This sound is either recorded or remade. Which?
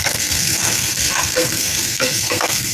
remade